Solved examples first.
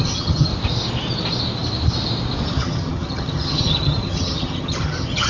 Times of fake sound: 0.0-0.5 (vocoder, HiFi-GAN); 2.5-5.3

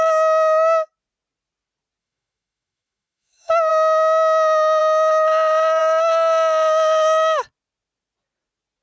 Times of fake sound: 2.0-3.7 (autoencoder, DAC-VAE)

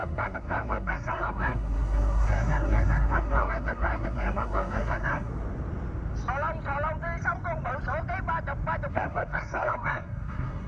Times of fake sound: 0.0-5.3 (codec, SNAC); 8.9-10.7

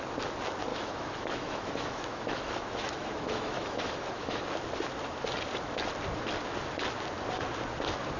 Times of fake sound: 0.7-4.4 (autoencoder, DAC-VAE)

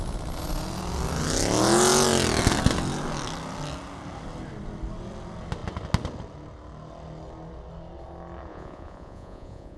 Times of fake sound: 8.5-9.8 (vocoder, Vocos)

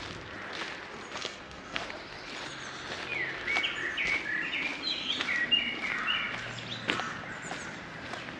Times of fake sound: 1.2-1.8 (codec, SNAC)

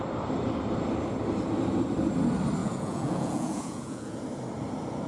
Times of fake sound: 2.6-4.2 (vocoder, Vocos)